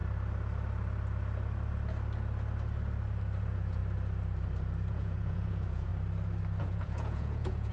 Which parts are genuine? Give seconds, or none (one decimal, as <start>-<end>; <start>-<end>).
0.0-3.4; 3.8-4.9; 5.9-6.6